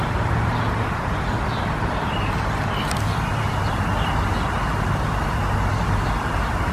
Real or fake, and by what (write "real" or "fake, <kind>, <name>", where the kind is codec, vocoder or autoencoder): real